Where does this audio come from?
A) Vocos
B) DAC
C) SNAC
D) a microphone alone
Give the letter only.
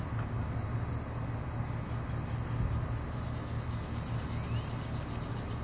D